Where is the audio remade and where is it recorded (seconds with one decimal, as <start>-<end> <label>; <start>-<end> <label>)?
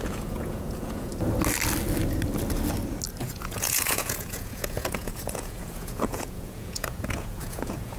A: 0.0-1.1 remade; 1.1-3.2 recorded; 3.2-8.0 remade